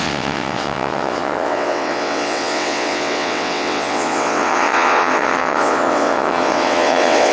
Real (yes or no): no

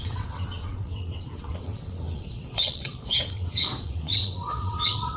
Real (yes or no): no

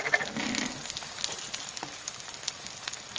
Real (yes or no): yes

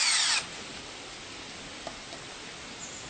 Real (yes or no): yes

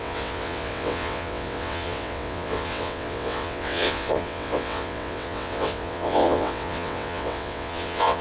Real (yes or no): no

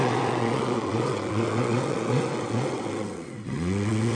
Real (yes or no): no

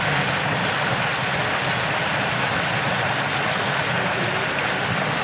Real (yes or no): yes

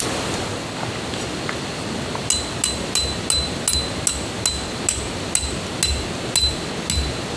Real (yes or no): yes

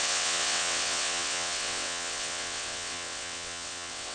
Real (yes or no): no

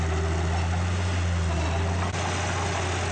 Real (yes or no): yes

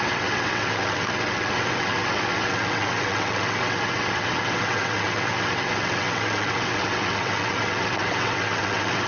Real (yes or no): no